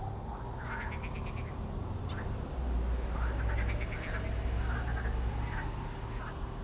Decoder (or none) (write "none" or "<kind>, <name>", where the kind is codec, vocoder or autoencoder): none